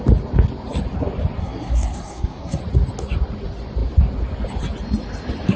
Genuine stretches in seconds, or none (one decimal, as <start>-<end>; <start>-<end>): 0.0-1.4; 2.6-5.6